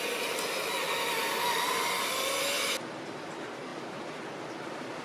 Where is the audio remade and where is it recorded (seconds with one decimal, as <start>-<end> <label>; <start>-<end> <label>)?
0.0-5.0 recorded